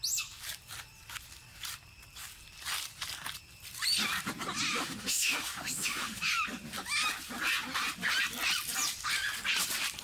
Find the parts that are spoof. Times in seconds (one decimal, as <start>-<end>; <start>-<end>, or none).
4.7-6.2